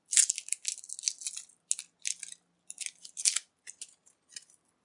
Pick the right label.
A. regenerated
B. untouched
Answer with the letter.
B